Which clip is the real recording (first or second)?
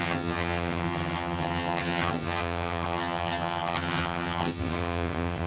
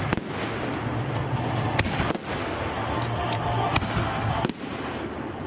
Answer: second